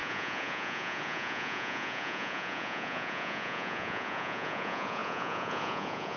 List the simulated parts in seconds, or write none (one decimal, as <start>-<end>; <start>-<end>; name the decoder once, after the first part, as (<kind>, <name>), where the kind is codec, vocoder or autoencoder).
0.0-6.2 (vocoder, Vocos)

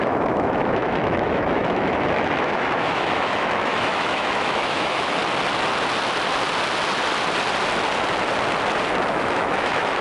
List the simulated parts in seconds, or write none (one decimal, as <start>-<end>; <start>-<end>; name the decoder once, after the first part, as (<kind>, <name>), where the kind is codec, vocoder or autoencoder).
0.0-5.2 (autoencoder, DAC-VAE); 9.1-10.0